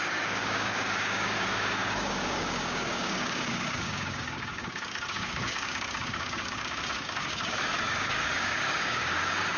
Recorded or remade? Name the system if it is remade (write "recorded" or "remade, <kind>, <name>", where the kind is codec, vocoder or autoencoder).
remade, codec, DAC